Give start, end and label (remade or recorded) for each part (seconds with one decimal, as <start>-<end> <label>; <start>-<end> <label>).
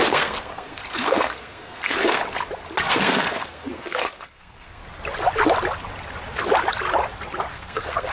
0.0-2.2 remade; 2.2-2.9 recorded; 2.9-4.8 remade; 4.8-7.5 recorded; 7.5-8.1 remade